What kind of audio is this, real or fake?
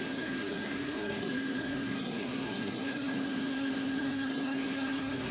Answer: fake